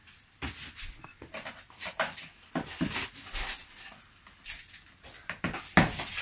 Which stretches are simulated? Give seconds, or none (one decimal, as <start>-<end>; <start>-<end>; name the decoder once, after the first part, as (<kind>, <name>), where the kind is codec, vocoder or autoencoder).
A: none